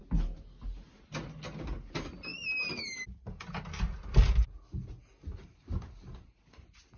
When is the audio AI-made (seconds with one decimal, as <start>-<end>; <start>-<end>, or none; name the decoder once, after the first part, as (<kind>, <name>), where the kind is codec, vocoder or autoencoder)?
none